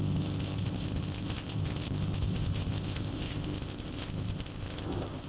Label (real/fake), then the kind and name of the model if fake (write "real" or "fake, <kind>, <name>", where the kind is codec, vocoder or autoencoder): fake, codec, ZipCodec